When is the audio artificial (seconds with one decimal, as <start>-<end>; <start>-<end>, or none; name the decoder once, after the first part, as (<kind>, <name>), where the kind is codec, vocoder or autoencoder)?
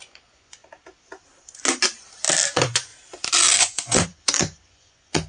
0.0-0.6 (vocoder, Vocos); 2.5-2.9; 3.6-5.3